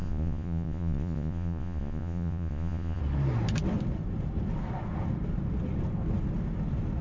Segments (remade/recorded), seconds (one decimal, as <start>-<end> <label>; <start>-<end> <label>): 0.0-3.0 remade; 3.0-7.0 recorded